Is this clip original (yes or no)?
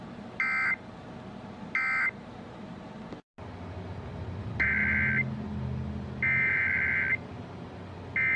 yes